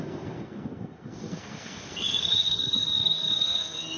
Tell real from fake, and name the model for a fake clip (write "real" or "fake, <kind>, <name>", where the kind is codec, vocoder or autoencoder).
fake, codec, SNAC